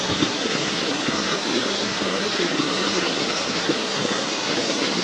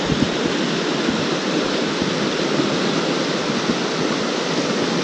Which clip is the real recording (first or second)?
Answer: second